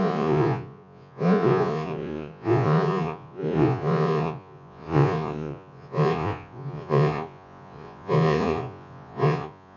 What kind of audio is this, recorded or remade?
remade